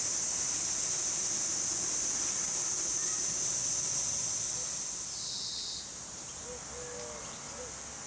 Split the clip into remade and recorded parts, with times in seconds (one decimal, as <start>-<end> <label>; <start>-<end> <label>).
0.0-5.9 recorded; 5.9-6.4 remade; 6.4-8.1 recorded